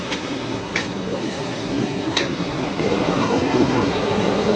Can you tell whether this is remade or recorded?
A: remade